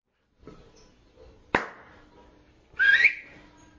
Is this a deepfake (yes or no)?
no